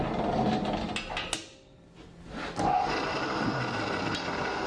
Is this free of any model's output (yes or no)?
yes